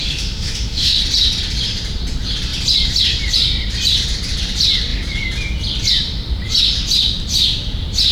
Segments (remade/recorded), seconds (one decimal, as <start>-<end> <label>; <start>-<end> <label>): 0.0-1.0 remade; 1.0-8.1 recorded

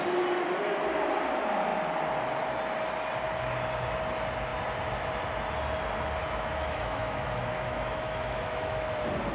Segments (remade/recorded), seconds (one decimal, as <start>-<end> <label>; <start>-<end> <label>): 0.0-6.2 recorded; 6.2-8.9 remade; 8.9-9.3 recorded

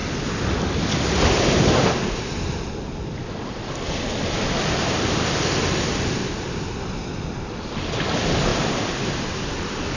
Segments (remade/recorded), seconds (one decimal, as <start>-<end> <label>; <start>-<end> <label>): 0.0-10.0 recorded

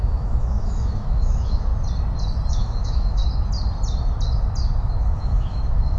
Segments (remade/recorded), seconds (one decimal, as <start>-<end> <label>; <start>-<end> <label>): 0.0-1.7 remade; 1.7-2.5 recorded; 2.5-3.2 remade; 3.2-4.8 recorded; 4.8-6.0 remade

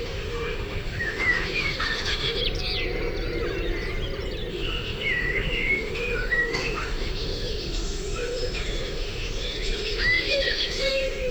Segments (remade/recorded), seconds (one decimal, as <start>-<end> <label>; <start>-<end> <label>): 0.0-2.4 remade; 2.4-4.5 recorded; 4.5-11.3 remade

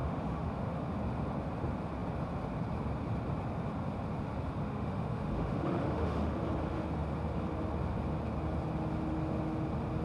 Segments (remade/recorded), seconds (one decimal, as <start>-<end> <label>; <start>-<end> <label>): 0.0-0.9 remade; 0.9-4.6 recorded; 4.6-6.3 remade; 6.3-10.0 recorded